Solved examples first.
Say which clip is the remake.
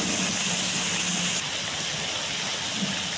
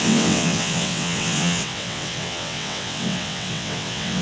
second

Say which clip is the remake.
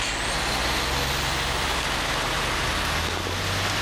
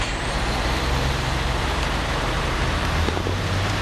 second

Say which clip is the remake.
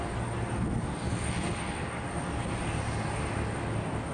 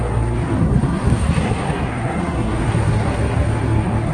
second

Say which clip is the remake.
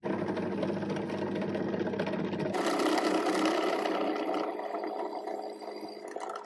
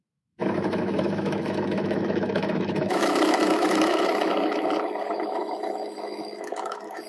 second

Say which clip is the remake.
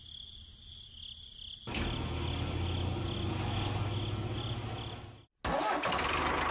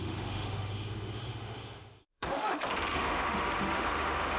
second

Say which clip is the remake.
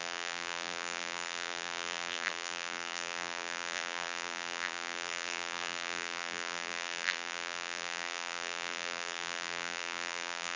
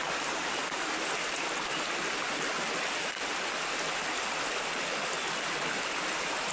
first